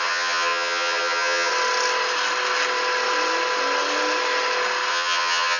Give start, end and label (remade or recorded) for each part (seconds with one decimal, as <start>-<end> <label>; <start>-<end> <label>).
0.0-1.5 remade; 1.5-4.9 recorded; 4.9-5.6 remade